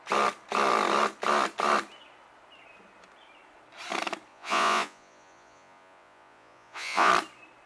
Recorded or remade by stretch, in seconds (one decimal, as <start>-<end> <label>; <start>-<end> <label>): 0.0-4.3 recorded; 4.3-7.1 remade; 7.1-7.7 recorded